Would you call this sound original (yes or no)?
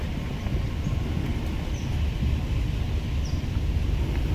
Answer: yes